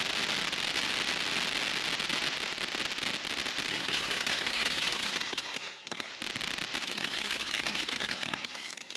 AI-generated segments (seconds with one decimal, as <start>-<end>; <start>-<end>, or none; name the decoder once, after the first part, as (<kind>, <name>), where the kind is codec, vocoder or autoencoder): 3.7-6.1 (codec, SNAC); 6.8-9.0